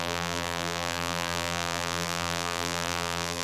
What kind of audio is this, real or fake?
fake